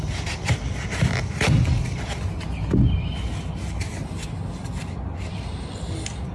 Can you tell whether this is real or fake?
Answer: real